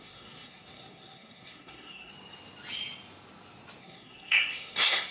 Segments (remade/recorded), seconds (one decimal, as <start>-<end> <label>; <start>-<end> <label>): 0.0-2.1 remade; 2.1-3.8 recorded; 3.8-5.1 remade

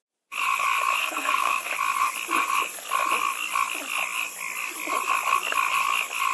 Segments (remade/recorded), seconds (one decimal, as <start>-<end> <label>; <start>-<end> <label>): 0.0-1.0 recorded; 1.0-1.7 remade; 1.7-6.3 recorded

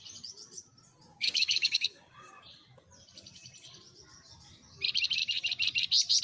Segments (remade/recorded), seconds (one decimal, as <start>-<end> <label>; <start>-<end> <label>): 0.0-1.1 recorded; 1.1-2.4 remade; 2.4-6.2 recorded

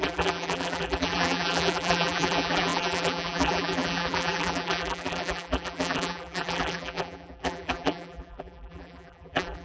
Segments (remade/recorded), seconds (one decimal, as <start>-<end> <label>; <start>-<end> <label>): 0.0-9.6 remade

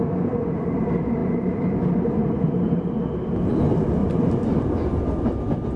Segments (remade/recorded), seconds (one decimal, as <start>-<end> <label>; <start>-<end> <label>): 0.0-1.2 recorded; 1.2-2.8 remade; 2.8-4.0 recorded; 4.0-4.7 remade; 4.7-5.8 recorded

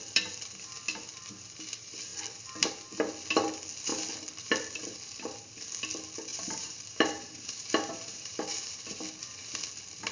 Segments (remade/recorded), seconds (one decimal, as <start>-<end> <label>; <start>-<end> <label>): 0.0-6.3 recorded; 6.3-8.8 remade; 8.8-10.1 recorded